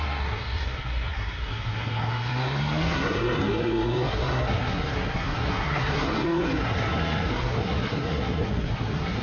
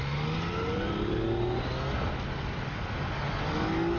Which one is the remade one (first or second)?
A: first